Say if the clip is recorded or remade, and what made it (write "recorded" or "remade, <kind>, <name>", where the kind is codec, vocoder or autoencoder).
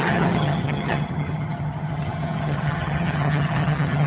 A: remade, vocoder, HiFi-GAN